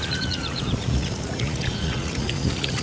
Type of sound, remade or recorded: remade